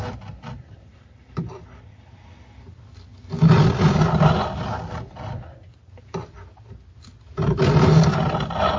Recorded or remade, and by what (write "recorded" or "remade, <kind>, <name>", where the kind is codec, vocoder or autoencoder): recorded